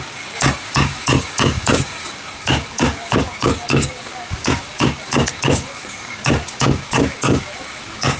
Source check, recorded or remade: remade